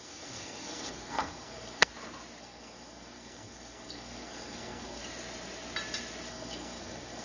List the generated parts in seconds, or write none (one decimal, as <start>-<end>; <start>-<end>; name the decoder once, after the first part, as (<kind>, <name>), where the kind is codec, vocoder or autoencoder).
0.0-1.9 (codec, SNAC); 2.4-5.0; 6.3-7.2

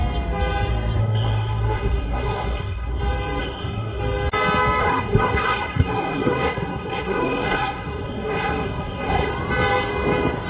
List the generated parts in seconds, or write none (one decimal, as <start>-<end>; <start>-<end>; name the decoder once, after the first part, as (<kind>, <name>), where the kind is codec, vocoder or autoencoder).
1.0-3.0 (codec, SNAC); 3.4-4.0; 4.8-9.3

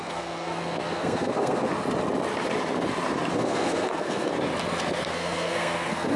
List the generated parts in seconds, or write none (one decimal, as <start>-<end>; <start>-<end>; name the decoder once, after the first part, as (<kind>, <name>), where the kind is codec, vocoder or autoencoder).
0.0-1.7 (codec, SNAC); 3.3-4.3; 5.1-6.2

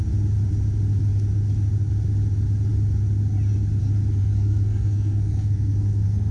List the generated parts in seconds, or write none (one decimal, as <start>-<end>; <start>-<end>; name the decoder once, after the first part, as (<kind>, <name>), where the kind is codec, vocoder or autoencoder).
4.2-6.3 (codec, SNAC)

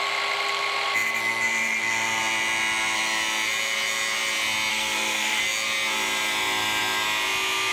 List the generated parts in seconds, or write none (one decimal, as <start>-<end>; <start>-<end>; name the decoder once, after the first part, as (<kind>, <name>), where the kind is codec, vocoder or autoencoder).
4.7-5.4 (codec, SNAC)